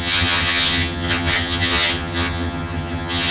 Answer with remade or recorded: remade